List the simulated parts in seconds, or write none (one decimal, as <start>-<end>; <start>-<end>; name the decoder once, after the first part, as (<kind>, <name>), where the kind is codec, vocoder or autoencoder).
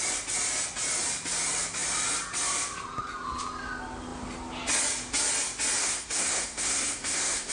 5.8-7.5 (codec, SNAC)